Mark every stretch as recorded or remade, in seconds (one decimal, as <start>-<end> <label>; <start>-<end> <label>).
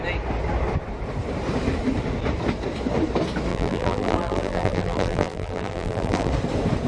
0.0-3.5 recorded; 3.5-6.3 remade; 6.3-6.9 recorded